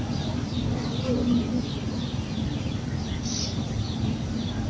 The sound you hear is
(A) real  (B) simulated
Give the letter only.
A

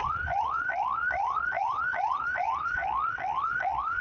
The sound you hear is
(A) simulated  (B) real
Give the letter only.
A